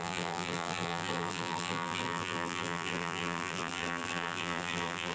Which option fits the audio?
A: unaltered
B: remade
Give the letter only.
B